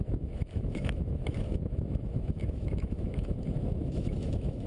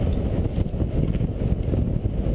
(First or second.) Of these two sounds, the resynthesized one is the first